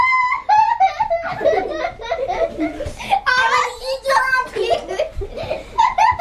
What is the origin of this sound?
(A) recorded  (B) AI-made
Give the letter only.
A